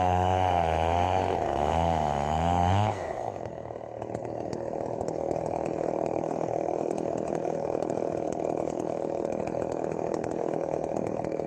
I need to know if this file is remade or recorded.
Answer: remade